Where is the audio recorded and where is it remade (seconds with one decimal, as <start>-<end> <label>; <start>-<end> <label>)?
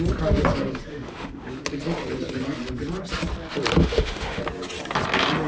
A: 0.0-0.9 recorded; 0.9-1.5 remade; 1.5-3.8 recorded; 3.8-4.4 remade; 4.4-5.5 recorded